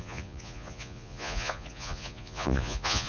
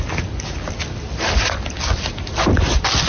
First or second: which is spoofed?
first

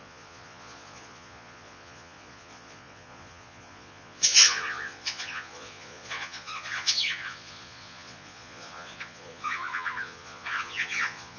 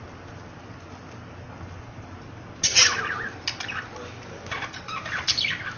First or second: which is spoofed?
first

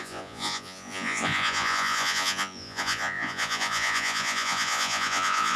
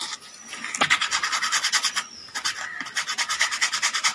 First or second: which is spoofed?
first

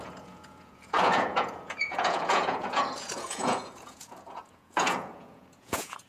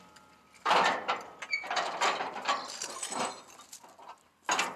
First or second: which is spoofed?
first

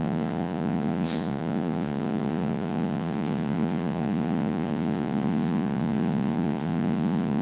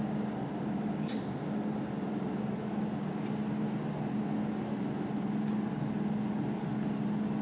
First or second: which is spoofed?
first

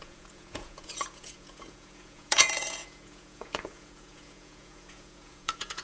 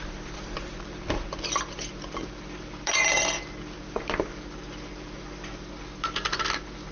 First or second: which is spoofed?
first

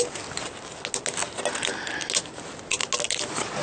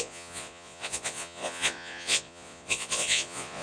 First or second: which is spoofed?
second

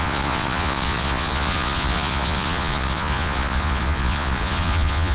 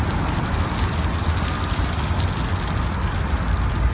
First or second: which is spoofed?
first